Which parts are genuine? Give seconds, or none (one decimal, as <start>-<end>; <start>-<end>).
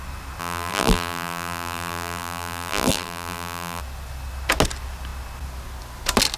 0.0-0.4; 3.8-6.4